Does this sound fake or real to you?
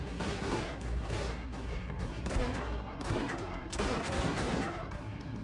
fake